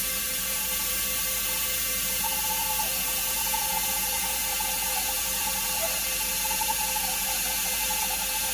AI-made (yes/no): yes